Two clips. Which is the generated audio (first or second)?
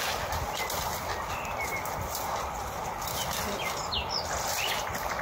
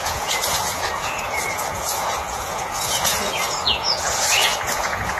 second